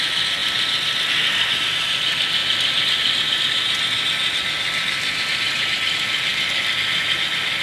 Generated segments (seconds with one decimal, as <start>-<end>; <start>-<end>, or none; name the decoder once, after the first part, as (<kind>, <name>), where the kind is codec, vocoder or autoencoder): none